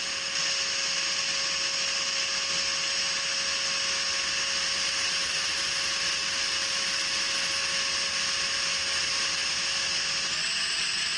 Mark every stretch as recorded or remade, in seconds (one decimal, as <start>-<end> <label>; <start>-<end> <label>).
0.0-11.2 recorded